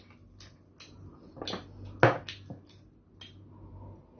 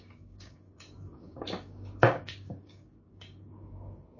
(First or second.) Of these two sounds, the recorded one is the first